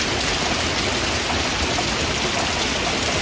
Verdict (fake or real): real